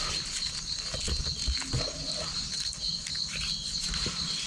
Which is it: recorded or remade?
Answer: recorded